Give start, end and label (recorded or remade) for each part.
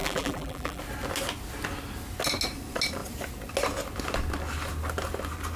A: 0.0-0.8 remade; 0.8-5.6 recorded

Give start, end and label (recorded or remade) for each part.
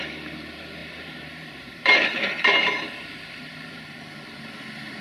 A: 0.0-0.8 recorded; 0.8-3.8 remade; 3.8-5.0 recorded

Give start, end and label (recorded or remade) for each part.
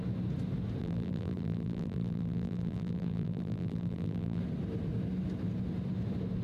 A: 0.0-0.8 recorded; 0.8-4.4 remade; 4.4-6.4 recorded